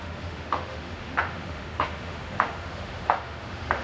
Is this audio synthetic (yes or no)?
yes